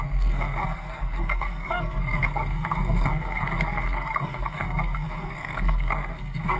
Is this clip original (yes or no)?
no